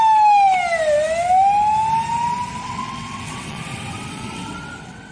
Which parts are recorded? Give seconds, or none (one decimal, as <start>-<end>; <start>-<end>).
0.0-2.6